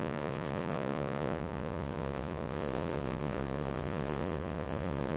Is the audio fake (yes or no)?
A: yes